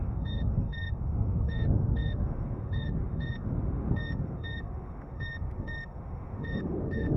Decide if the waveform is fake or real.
fake